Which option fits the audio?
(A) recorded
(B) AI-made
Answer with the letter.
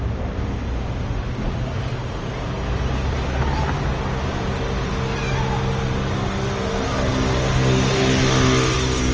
A